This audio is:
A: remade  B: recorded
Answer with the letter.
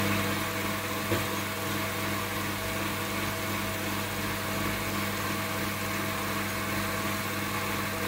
B